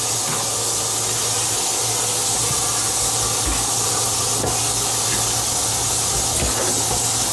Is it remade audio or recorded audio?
recorded